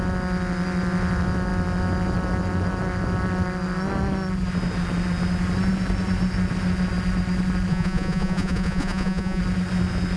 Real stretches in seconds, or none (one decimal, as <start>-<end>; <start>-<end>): 0.0-7.7; 9.4-10.2